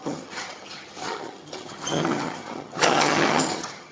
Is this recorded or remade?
remade